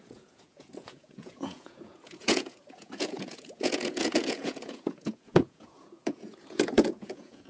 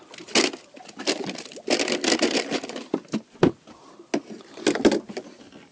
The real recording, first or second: second